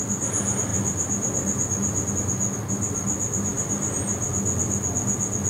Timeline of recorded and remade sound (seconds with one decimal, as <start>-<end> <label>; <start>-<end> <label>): 0.0-5.5 recorded